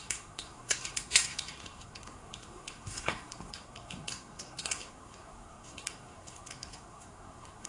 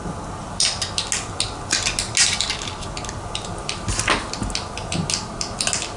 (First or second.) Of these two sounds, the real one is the second